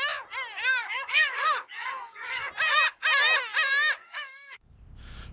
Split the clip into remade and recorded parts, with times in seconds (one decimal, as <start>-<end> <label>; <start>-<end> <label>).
0.0-0.8 recorded; 0.8-2.5 remade; 2.5-4.0 recorded; 4.0-4.7 remade; 4.7-5.3 recorded